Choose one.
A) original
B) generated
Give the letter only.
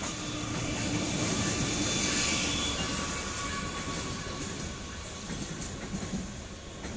A